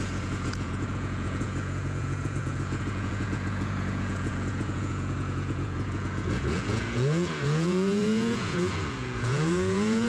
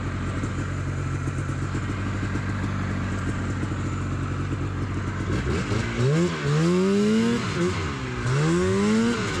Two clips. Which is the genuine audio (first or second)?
second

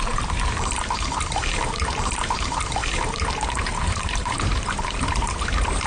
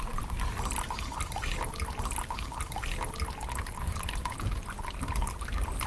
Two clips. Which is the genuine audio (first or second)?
second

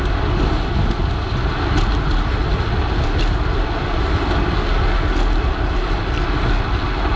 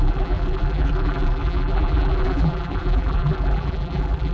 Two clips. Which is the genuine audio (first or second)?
first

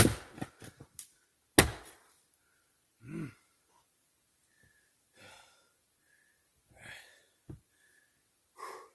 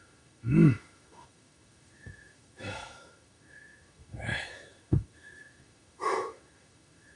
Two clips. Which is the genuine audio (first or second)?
first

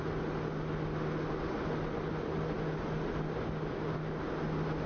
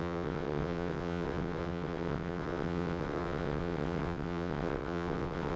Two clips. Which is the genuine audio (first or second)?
first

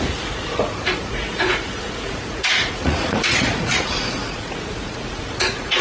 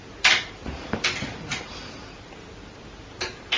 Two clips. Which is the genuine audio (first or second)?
second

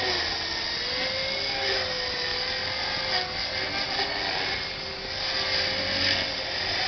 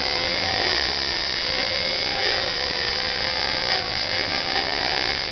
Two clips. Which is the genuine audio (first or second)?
first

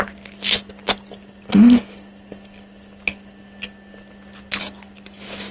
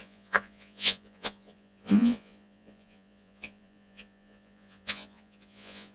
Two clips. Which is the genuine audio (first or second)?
first